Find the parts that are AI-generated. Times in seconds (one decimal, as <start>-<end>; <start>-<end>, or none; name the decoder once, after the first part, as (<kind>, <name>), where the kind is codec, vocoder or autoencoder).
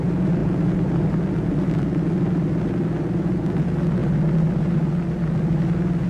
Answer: none